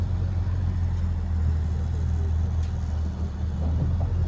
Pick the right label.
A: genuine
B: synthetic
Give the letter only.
A